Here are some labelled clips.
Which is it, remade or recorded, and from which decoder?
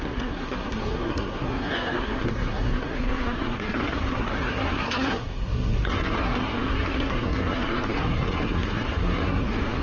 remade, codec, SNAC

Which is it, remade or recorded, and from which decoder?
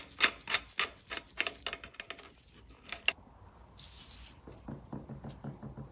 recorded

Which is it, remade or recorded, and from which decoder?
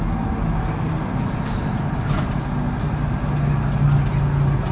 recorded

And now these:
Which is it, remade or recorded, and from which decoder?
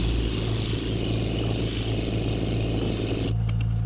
recorded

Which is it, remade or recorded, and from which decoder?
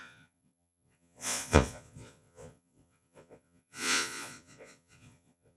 remade, vocoder, Vocos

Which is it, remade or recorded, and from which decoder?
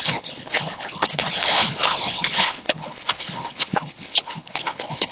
remade, codec, HILCodec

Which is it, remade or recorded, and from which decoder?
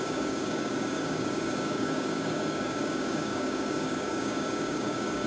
remade, codec, DAC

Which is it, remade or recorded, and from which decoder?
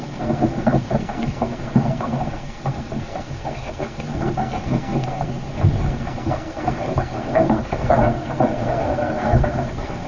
remade, codec, SNAC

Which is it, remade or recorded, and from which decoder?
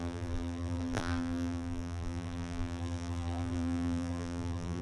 remade, vocoder, BigVGAN v2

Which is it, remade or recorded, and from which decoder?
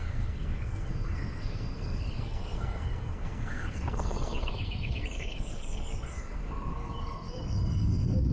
remade, codec, SNAC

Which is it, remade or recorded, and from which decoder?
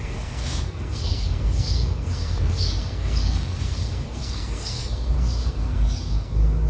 remade, codec, SNAC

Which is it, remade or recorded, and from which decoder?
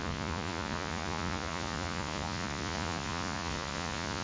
remade, vocoder, Vocos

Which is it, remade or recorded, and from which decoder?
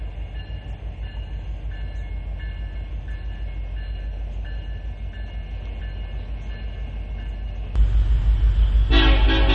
recorded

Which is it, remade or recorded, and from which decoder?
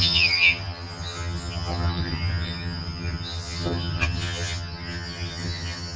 remade, vocoder, HiFi-GAN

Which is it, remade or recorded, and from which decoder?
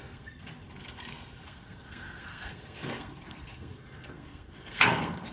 remade, codec, SNAC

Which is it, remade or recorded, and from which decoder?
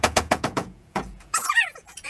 remade, vocoder, Vocos